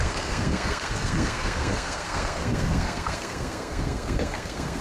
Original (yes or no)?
no